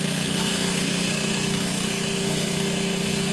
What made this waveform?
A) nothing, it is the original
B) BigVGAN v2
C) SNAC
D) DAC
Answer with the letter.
C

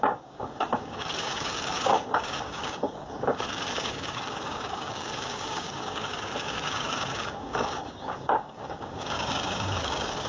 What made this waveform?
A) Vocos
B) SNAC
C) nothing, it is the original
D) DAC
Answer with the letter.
D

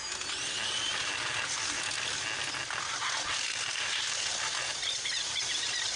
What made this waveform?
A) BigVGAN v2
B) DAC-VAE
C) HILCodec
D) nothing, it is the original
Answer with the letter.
D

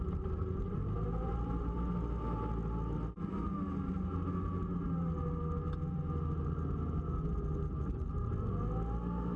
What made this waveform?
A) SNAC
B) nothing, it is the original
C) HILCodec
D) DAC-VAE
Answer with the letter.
B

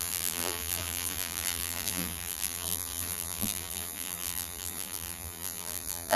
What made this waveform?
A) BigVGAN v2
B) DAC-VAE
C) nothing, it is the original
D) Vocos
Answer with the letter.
A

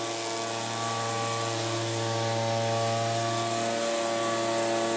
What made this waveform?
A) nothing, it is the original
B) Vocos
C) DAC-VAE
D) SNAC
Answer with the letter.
A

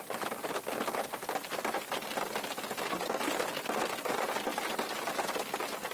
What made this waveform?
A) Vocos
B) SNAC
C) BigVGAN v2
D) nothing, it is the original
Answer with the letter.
D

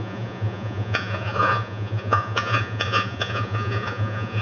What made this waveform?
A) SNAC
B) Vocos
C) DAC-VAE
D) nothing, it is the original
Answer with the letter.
B